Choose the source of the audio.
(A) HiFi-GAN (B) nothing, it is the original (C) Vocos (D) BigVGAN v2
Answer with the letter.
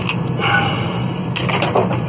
B